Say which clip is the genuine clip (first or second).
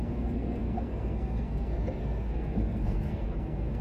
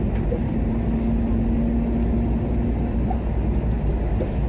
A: second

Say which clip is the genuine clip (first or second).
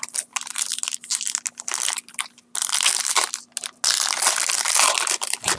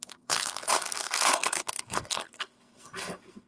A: first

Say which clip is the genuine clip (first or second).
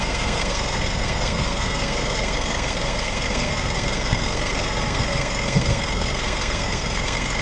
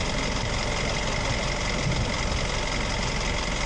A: second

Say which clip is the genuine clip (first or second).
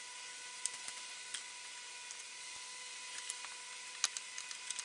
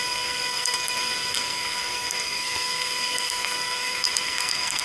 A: first